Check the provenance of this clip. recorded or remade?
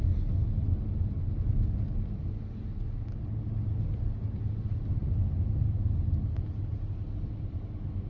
recorded